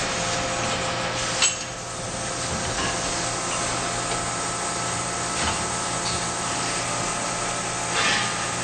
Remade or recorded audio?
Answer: recorded